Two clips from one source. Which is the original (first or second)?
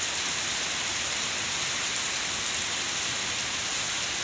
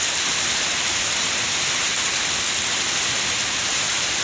first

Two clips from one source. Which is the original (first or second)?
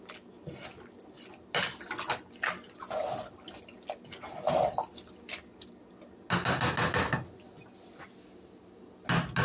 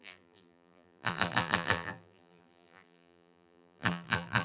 first